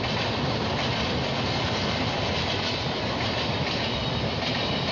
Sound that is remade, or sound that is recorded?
recorded